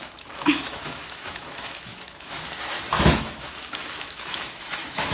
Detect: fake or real fake